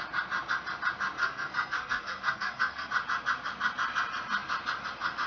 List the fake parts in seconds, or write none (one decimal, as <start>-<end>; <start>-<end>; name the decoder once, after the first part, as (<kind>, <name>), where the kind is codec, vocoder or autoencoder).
1.2-2.9 (codec, SNAC)